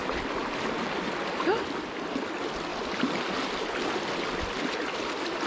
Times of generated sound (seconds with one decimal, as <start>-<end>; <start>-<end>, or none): none